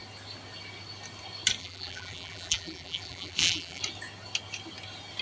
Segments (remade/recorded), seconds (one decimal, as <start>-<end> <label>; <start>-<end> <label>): 0.0-1.6 recorded; 1.6-3.8 remade; 3.8-5.2 recorded